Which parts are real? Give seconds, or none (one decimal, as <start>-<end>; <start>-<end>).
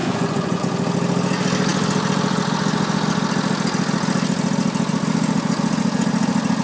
0.6-6.6